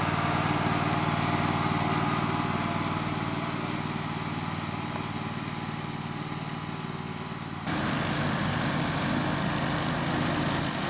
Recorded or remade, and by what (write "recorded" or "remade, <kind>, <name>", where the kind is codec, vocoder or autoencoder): recorded